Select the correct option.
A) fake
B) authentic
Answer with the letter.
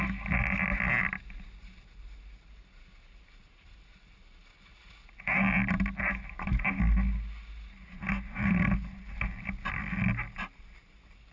B